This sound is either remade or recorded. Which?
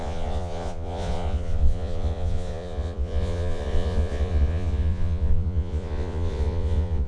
remade